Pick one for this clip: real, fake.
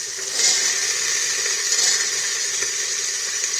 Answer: real